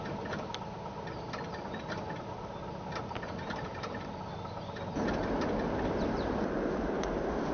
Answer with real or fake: real